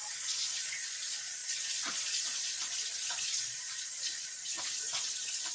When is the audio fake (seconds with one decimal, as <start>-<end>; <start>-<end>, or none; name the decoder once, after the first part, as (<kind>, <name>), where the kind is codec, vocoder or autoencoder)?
0.0-5.5 (vocoder, Vocos)